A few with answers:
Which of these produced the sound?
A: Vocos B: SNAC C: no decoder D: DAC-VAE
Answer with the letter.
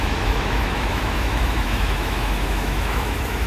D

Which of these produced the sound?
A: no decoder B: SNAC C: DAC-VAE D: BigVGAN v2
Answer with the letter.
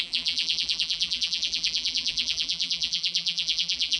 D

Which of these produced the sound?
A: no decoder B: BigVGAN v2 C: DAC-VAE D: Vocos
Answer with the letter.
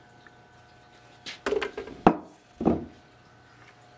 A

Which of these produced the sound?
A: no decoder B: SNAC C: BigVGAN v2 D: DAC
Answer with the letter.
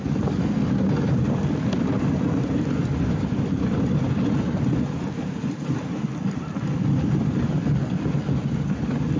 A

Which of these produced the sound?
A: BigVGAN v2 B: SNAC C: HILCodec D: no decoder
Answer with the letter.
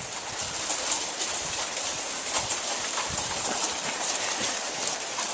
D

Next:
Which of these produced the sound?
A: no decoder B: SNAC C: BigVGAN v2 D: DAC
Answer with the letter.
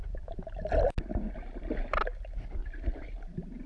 A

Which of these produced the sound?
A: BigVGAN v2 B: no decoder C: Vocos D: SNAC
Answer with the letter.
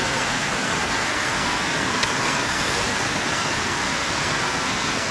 D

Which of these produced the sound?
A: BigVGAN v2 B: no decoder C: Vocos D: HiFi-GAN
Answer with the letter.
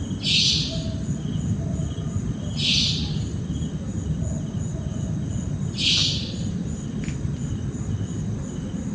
B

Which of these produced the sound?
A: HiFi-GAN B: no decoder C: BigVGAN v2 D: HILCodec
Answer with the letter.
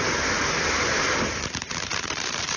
C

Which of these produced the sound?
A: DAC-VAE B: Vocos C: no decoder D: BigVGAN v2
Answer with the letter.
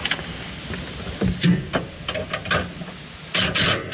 C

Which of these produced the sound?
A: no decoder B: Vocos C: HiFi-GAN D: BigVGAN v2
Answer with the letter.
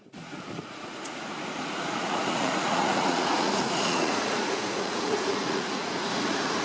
B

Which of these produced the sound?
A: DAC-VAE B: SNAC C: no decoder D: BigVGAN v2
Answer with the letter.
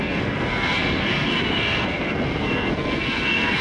B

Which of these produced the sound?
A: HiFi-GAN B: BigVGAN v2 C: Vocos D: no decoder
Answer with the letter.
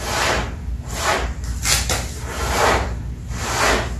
D